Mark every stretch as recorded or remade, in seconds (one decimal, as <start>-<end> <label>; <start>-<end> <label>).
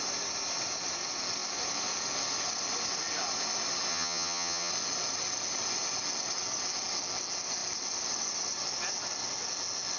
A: 0.0-3.9 recorded; 3.9-4.7 remade; 4.7-10.0 recorded